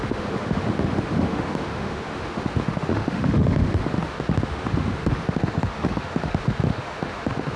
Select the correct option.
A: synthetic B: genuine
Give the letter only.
A